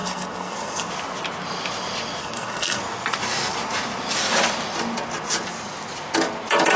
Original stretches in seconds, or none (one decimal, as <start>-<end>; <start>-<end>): 0.9-2.2; 2.8-6.8